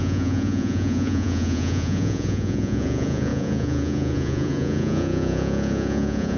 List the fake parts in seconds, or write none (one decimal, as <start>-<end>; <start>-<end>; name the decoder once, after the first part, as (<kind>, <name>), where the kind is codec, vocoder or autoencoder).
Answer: 0.0-6.4 (vocoder, Vocos)